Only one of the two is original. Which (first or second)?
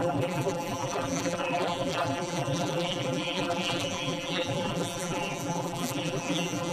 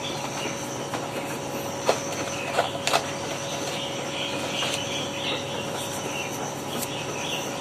second